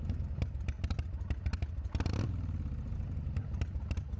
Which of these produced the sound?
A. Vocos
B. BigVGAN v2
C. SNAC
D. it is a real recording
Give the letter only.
D